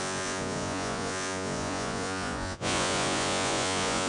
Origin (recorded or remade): remade